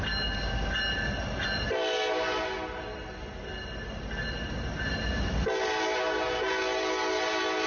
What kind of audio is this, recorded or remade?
recorded